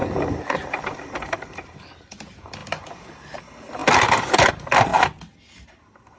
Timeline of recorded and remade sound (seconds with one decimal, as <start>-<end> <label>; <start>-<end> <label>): 0.0-2.2 remade; 2.2-6.2 recorded